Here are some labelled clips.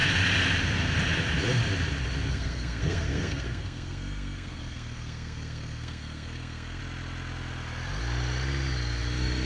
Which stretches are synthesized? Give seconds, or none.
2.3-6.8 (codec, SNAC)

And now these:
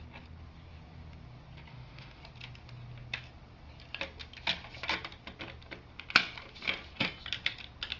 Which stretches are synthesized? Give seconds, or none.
1.7-2.2 (autoencoder, DAC-VAE)